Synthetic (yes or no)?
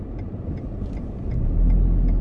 no